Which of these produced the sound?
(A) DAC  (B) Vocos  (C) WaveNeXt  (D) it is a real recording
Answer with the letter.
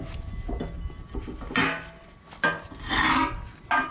D